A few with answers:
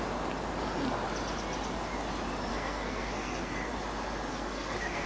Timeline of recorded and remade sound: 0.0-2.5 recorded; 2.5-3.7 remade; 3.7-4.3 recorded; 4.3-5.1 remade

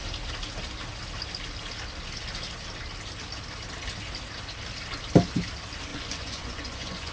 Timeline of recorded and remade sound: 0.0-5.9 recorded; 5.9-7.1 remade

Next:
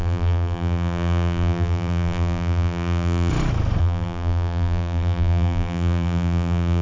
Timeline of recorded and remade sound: 0.0-3.3 remade; 3.3-3.8 recorded; 3.8-6.8 remade

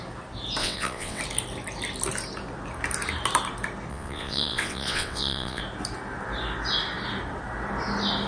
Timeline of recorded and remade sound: 0.0-0.6 recorded; 0.6-1.2 remade; 1.2-3.9 recorded; 3.9-5.6 remade; 5.6-8.3 recorded

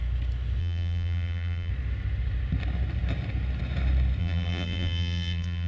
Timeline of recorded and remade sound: 0.0-0.6 recorded; 0.6-1.7 remade; 1.7-4.2 recorded; 4.2-5.7 remade